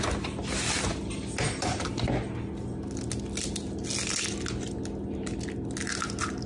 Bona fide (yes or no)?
yes